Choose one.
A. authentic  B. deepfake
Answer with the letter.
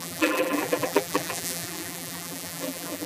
B